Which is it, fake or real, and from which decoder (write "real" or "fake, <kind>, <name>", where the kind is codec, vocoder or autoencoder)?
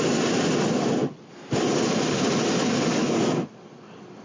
real